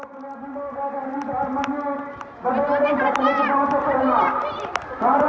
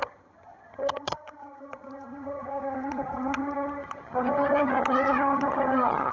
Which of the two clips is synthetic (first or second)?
second